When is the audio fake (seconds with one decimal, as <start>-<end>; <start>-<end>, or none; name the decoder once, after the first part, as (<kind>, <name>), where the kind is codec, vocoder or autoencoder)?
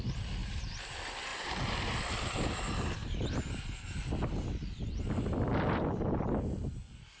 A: 0.4-0.9 (vocoder, BigVGAN v2); 1.3-2.0; 3.0-3.6